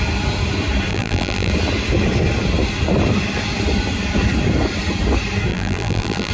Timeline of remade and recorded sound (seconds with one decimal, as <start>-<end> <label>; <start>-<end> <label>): 0.0-0.9 recorded; 0.9-1.5 remade; 1.5-5.5 recorded; 5.5-6.3 remade